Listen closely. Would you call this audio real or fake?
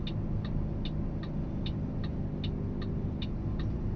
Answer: real